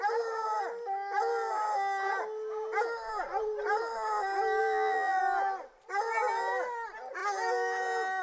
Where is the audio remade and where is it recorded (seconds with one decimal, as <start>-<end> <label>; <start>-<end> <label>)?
0.0-4.6 recorded; 4.6-5.2 remade; 5.2-8.2 recorded